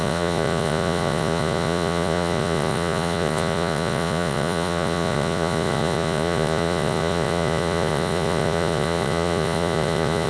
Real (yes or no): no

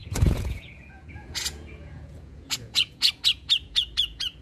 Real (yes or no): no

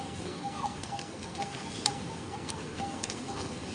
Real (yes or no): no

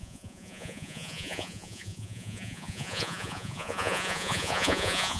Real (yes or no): no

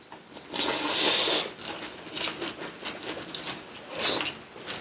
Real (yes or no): yes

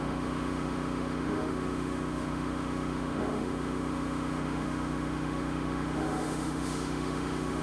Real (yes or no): no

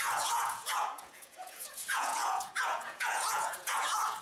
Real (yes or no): no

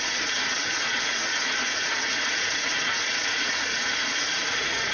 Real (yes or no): no